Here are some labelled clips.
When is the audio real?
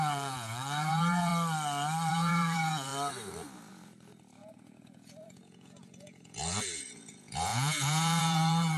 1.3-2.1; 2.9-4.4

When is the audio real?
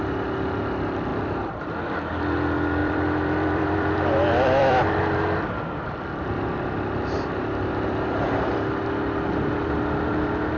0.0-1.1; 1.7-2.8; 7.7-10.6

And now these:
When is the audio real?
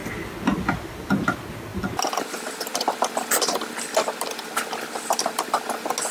0.0-6.1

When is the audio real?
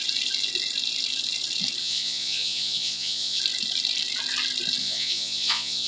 0.0-1.8; 3.4-4.8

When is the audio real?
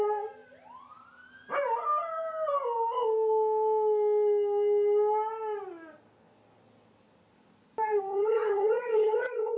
0.0-8.1